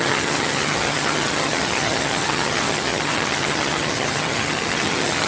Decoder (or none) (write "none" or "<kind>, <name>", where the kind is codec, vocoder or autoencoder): vocoder, HiFi-GAN